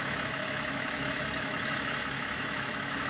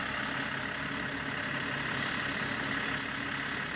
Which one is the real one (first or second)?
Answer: second